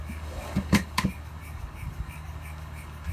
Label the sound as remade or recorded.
remade